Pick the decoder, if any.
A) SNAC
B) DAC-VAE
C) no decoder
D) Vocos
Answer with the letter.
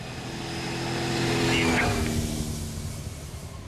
C